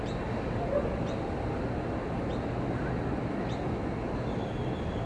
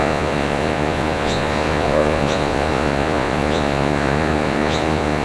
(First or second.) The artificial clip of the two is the second